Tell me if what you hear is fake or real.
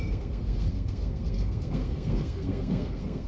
fake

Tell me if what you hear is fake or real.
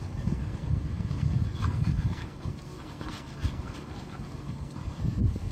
fake